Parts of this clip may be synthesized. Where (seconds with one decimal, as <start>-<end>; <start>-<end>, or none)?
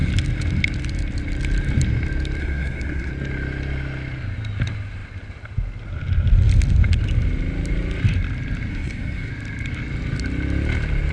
2.4-3.1; 8.7-9.3